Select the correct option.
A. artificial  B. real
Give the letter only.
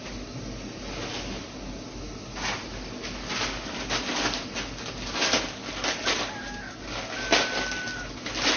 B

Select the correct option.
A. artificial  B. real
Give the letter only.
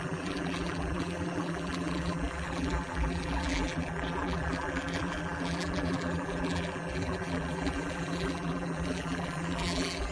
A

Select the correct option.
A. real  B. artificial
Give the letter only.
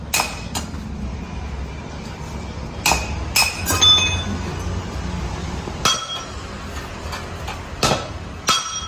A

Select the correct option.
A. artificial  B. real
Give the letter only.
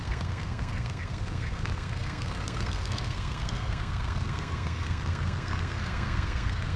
A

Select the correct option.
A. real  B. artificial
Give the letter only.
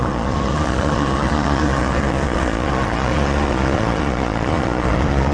B